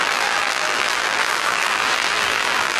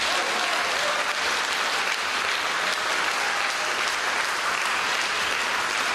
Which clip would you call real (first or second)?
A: second